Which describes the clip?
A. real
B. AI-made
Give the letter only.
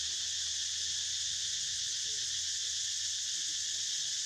A